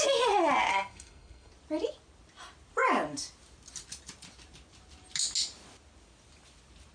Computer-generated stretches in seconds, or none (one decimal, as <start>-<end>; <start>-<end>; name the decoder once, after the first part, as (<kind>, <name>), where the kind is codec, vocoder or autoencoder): 0.7-1.5 (codec, SNAC)